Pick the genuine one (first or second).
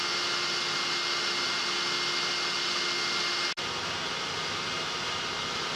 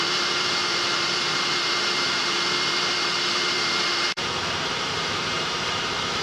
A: first